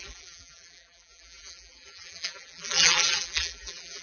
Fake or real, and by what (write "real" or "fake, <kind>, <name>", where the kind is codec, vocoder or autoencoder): fake, vocoder, BigVGAN v2